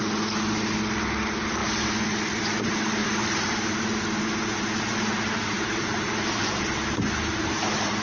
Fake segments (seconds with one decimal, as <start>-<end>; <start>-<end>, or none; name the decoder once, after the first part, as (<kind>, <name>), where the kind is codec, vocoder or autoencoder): 1.6-2.4 (vocoder, BigVGAN v2); 3.0-6.6